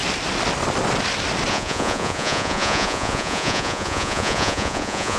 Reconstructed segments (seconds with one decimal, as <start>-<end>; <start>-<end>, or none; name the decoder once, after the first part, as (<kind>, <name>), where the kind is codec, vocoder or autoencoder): 1.5-5.2 (vocoder, Vocos)

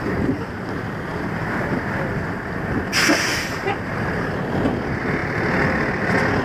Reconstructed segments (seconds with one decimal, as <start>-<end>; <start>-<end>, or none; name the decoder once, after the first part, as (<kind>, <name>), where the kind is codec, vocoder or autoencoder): 3.3-4.3 (vocoder, BigVGAN v2)

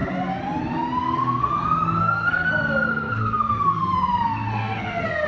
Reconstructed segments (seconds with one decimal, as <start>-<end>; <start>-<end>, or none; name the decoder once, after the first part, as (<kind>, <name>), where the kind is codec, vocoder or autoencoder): 1.0-1.5 (codec, SNAC); 2.0-2.5; 2.9-5.3

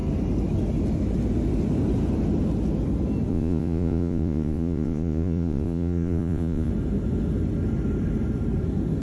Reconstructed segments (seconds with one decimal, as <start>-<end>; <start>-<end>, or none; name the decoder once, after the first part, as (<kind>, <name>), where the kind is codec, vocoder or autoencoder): 3.3-6.7 (vocoder, Vocos)

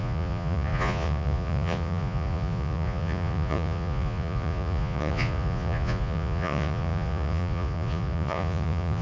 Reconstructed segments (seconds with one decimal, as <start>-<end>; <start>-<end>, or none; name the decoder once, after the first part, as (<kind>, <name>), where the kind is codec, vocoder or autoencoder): 0.0-9.0 (vocoder, Vocos)